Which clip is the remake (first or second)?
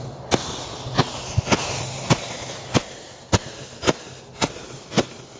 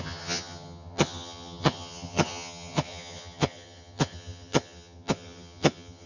second